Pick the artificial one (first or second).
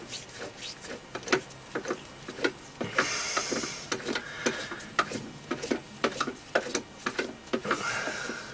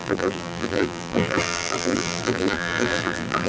second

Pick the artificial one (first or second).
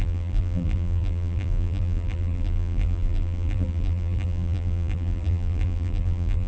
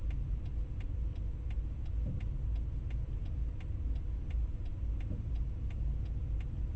first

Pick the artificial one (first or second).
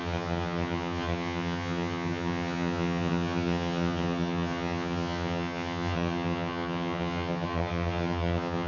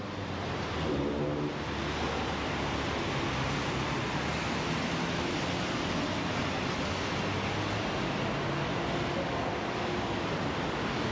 first